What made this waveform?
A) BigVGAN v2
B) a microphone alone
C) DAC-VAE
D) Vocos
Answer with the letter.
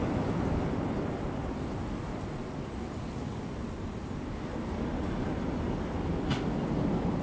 B